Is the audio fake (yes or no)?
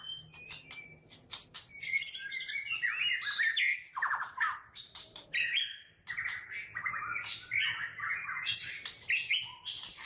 no